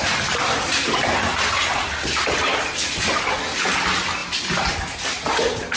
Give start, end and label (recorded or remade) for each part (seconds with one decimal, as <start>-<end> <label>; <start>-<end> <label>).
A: 0.0-5.8 recorded